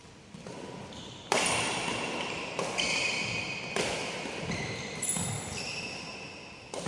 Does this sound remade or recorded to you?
recorded